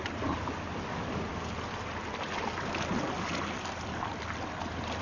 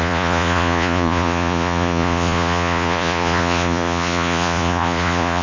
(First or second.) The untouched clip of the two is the first